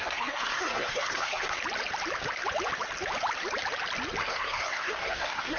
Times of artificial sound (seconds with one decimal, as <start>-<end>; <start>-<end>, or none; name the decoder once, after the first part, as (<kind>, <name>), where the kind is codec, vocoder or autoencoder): 0.0-1.6 (codec, SNAC); 4.2-5.6

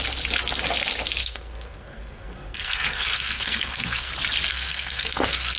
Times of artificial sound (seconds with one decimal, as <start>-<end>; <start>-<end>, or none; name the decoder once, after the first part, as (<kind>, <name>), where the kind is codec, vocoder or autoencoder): 1.2-4.1 (codec, SNAC); 4.5-5.6

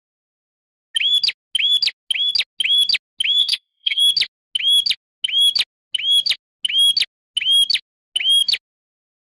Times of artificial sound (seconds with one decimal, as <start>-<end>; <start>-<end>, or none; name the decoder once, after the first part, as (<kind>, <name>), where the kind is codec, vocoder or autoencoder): 3.4-4.0 (codec, SNAC)

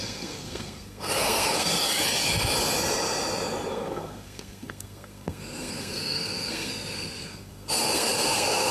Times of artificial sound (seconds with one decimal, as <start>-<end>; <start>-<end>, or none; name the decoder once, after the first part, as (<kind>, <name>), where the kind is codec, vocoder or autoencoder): 0.0-1.7 (codec, SNAC); 3.7-8.7